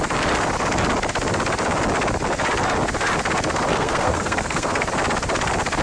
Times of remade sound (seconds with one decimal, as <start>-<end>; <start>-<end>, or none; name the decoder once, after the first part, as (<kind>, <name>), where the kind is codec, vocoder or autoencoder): 3.7-4.9 (codec, SNAC)